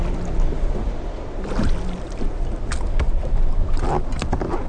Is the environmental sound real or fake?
real